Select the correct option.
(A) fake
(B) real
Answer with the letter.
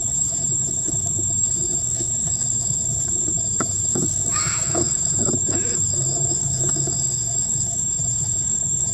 A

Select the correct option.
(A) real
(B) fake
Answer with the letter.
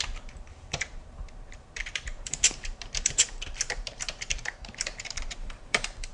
B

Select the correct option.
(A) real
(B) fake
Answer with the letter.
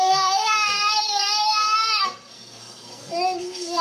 B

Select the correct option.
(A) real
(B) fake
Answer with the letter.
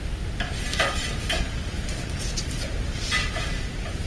A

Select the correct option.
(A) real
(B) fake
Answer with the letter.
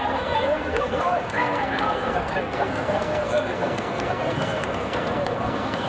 B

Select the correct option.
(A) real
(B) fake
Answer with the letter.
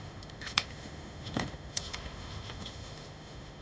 B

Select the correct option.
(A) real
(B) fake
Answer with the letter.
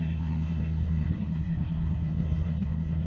B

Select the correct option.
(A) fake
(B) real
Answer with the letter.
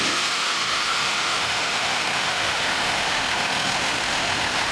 A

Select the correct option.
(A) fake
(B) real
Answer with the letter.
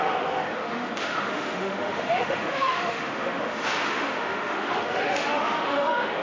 A